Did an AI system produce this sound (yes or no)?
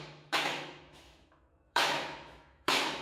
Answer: yes